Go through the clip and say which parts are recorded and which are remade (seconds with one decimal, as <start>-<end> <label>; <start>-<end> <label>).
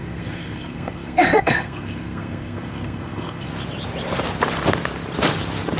0.0-3.5 remade; 3.5-5.8 recorded